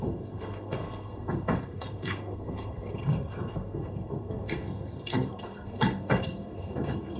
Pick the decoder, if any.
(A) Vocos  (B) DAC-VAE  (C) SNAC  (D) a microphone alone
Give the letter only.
C